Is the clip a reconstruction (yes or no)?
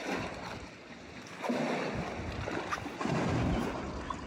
no